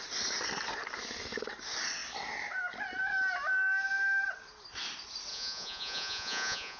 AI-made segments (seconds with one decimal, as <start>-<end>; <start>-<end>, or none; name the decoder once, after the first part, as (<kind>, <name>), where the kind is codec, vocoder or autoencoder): 5.3-6.8 (vocoder, Vocos)